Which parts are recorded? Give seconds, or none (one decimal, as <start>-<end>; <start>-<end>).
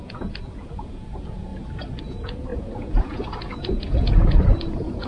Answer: 1.5-2.0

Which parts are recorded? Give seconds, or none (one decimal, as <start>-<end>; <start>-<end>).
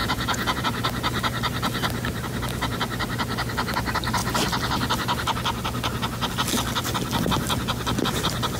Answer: 0.6-8.6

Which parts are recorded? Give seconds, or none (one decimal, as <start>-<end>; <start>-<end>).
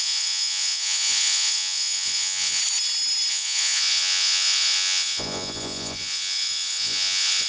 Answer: 2.6-3.3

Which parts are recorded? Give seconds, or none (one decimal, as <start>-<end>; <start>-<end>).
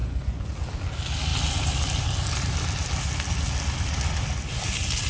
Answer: 0.5-5.1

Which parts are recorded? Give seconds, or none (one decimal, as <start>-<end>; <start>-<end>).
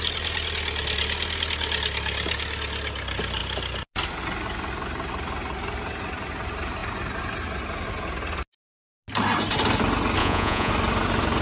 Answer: 0.0-10.2; 10.7-11.4